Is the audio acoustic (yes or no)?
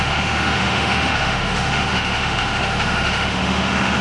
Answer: no